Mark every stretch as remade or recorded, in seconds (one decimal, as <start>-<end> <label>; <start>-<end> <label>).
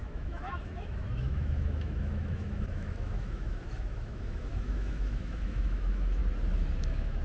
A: 0.0-6.2 remade; 6.2-6.8 recorded; 6.8-7.2 remade